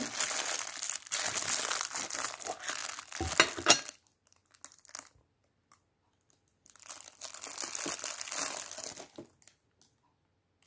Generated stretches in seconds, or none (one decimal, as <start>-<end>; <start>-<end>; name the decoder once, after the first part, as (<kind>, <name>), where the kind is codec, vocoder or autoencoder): none